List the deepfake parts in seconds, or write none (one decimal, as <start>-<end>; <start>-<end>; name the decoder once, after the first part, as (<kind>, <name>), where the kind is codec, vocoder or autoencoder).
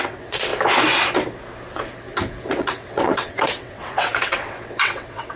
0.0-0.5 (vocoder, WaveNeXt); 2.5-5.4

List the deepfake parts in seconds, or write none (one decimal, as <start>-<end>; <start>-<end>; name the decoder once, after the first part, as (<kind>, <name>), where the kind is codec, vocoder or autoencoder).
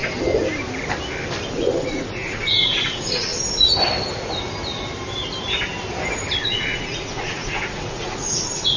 1.5-3.3 (vocoder, Vocos); 6.4-8.8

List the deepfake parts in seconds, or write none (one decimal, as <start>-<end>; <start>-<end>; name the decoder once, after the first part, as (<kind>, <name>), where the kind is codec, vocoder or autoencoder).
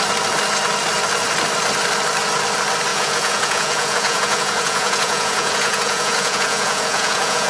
2.9-7.5 (vocoder, Vocos)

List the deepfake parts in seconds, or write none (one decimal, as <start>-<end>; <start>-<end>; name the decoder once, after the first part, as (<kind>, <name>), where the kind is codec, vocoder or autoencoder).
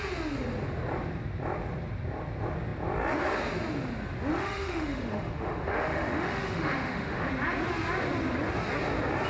4.3-7.3 (autoencoder, DAC-VAE)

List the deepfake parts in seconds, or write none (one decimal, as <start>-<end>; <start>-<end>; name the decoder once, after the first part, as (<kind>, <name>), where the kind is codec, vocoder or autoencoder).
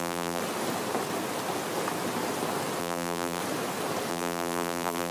0.0-0.4 (vocoder, BigVGAN v2); 2.8-3.4; 4.1-5.1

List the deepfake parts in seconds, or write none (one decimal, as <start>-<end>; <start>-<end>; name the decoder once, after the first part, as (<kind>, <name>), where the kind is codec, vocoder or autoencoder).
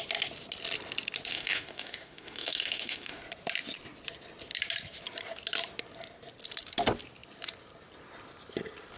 1.3-3.2 (autoencoder, DAC-VAE)